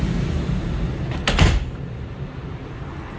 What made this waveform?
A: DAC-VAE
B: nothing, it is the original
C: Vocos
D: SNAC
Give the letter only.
B